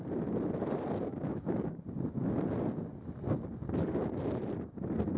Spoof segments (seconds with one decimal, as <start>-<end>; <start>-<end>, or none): 1.1-1.8